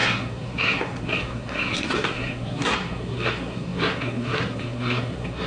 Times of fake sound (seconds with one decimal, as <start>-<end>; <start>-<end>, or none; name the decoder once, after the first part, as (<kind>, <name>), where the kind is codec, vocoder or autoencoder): 0.0-5.5 (codec, SNAC)